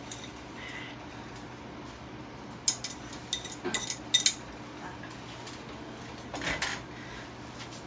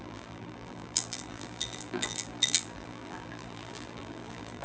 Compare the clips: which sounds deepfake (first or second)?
second